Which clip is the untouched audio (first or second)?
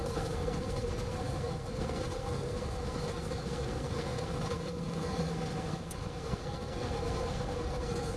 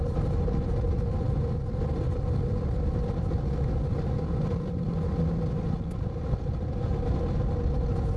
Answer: second